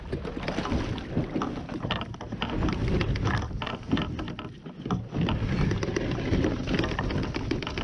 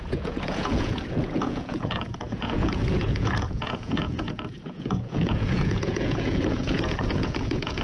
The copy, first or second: second